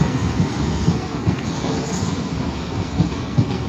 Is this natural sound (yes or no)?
no